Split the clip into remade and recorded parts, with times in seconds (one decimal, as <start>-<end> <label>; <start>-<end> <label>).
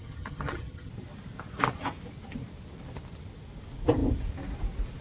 0.0-0.9 remade; 0.9-5.0 recorded